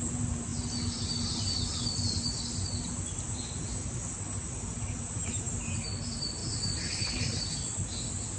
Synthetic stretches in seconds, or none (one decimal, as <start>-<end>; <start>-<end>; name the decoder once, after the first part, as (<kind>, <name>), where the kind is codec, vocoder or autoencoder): none